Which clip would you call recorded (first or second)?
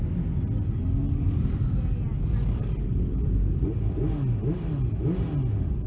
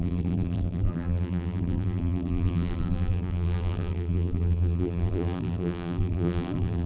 first